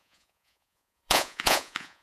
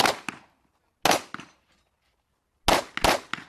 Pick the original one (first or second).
second